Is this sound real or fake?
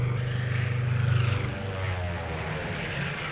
real